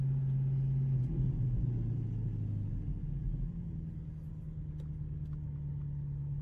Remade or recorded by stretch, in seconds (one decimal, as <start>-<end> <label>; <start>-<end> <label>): 0.0-6.4 recorded